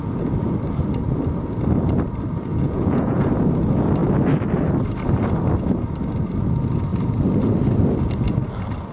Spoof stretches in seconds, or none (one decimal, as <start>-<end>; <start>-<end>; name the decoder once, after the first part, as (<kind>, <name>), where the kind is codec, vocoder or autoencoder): 2.5-3.3 (vocoder, Vocos)